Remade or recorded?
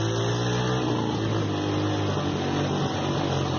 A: recorded